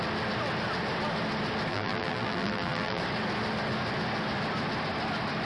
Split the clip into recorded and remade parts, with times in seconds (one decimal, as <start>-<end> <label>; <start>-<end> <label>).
0.0-1.7 recorded; 1.7-3.0 remade; 3.0-5.5 recorded